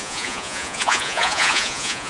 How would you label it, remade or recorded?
remade